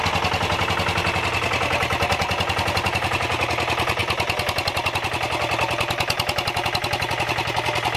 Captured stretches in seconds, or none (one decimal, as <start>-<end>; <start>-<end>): 0.0-8.0

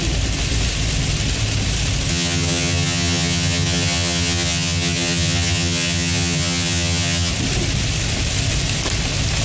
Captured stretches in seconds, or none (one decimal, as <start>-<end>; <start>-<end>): 0.0-2.1; 7.3-9.4

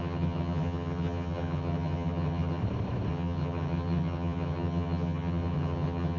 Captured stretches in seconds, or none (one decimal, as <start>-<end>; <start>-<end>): 2.6-3.1

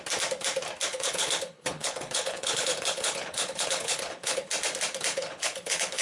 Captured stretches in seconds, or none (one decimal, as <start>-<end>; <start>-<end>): 0.0-0.9; 4.5-5.1

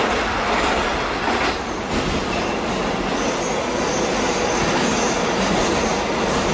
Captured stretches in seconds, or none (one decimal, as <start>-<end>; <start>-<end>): 0.0-6.5

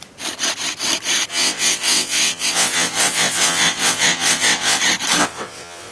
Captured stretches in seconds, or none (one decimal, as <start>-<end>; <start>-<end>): 0.0-1.3; 4.8-5.2

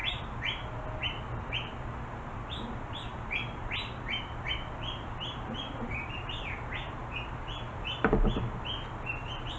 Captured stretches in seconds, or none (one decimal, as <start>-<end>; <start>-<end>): 0.0-1.4; 7.0-9.1

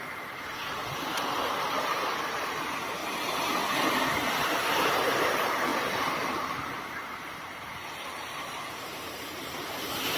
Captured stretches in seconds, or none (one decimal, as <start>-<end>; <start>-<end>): 3.0-4.4